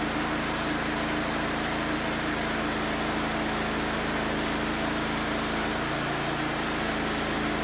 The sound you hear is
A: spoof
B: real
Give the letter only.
B